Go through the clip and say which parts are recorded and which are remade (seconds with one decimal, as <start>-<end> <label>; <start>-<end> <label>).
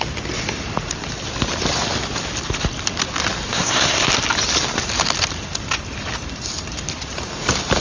0.0-3.5 recorded; 3.5-4.0 remade; 4.0-7.8 recorded